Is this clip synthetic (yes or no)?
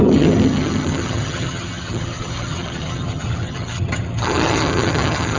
yes